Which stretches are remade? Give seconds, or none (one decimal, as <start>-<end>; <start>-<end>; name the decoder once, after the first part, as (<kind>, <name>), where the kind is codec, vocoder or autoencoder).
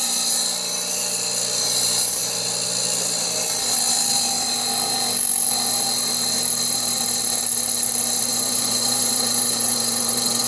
8.3-10.5 (vocoder, Vocos)